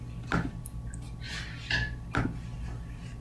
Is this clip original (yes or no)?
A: yes